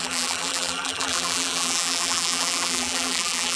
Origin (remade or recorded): remade